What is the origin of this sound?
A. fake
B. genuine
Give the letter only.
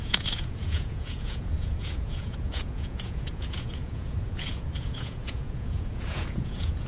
A